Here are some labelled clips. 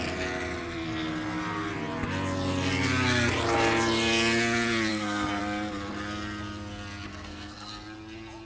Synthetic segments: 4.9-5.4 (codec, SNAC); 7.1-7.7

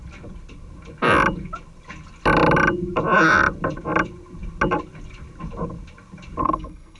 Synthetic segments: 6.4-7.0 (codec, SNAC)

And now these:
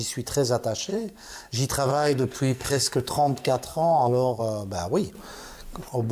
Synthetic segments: 0.9-1.5 (codec, SNAC); 1.9-4.4

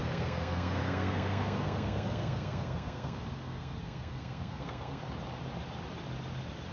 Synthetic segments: 0.0-5.0 (codec, SNAC)

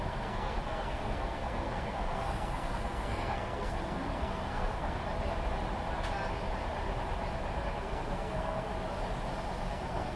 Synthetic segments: 0.0-5.0 (codec, SNAC); 7.7-8.7; 9.7-10.2